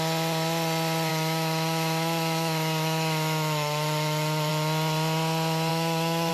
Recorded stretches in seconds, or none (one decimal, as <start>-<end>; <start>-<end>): 0.0-1.1; 4.5-5.7